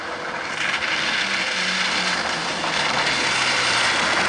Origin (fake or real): real